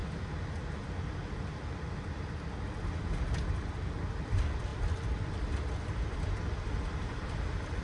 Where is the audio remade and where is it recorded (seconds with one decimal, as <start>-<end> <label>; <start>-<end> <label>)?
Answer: 0.0-4.2 recorded; 4.2-7.8 remade